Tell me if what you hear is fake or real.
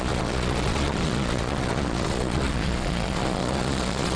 fake